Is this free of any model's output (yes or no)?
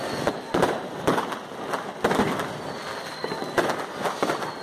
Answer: yes